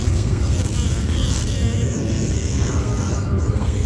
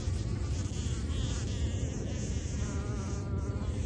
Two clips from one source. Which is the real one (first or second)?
second